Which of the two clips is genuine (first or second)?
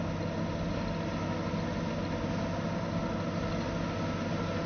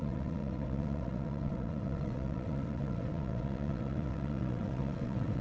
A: first